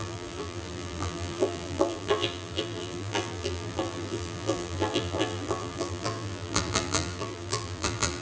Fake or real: fake